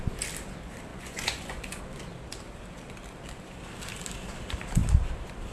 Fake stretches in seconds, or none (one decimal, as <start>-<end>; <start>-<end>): 0.9-1.8